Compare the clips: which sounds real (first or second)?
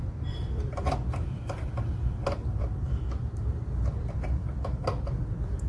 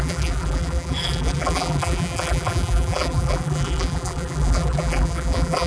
first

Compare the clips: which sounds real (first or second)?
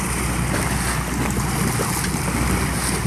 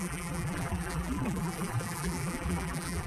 first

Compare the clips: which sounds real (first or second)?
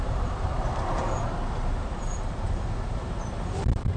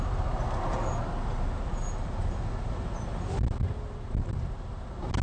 second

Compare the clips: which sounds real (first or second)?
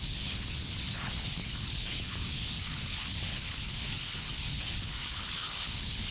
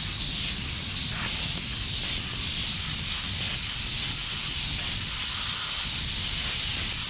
second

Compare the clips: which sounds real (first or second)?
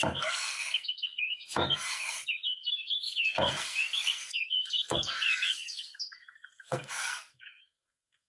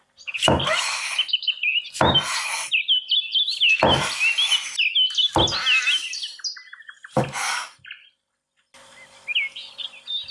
second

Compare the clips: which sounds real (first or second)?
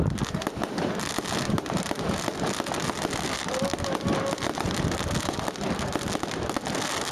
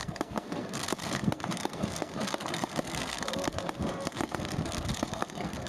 first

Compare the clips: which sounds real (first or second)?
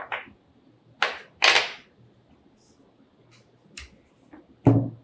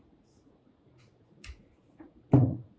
first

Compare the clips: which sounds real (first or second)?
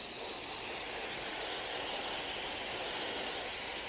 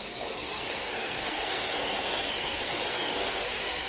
first